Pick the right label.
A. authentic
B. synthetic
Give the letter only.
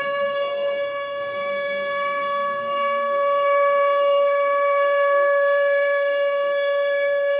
B